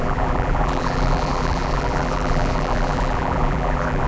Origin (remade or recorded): remade